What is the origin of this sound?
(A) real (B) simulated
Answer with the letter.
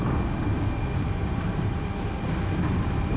A